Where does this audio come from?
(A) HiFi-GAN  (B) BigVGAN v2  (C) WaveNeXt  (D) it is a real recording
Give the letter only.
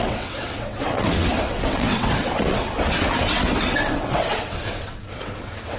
C